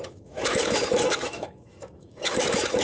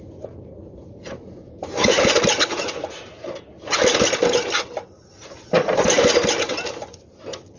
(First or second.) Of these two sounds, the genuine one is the second